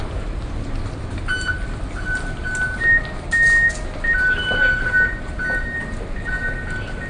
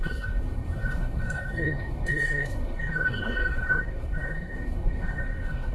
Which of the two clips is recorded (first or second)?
first